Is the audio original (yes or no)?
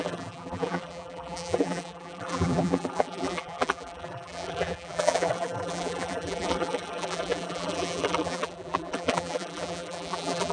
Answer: no